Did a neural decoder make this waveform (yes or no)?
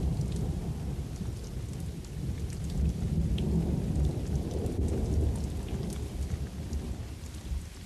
no